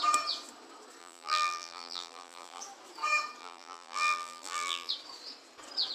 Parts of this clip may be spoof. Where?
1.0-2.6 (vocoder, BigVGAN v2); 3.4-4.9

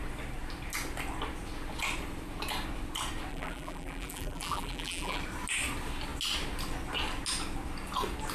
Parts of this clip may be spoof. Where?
3.3-5.2 (vocoder, BigVGAN v2)

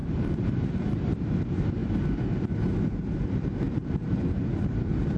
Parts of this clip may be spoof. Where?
0.0-5.2 (vocoder, BigVGAN v2)

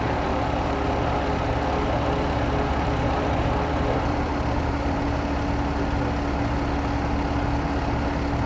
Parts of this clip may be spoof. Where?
2.7-5.0 (vocoder, BigVGAN v2)